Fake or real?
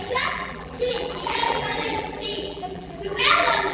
fake